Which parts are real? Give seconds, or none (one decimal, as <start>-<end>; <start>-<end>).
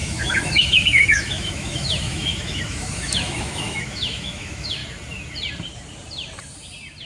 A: 4.8-7.0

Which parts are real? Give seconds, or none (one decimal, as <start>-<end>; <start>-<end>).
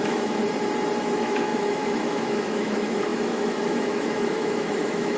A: 0.4-1.0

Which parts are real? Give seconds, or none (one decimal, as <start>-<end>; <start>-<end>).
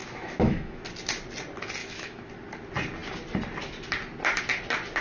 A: 0.8-1.8; 2.3-5.0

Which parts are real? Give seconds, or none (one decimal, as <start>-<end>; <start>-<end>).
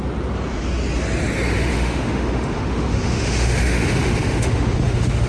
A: 0.0-1.7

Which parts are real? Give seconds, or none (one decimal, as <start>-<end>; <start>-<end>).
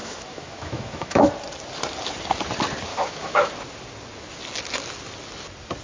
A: 1.3-2.9; 3.5-5.8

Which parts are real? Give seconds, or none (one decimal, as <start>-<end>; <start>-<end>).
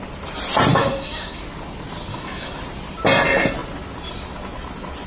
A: 0.0-0.7; 1.4-2.1; 2.6-5.1